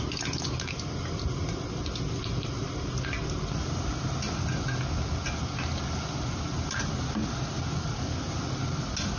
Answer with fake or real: real